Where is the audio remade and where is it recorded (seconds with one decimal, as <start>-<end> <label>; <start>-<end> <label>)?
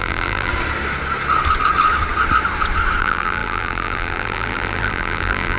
0.0-0.5 remade; 0.5-3.0 recorded; 3.0-5.6 remade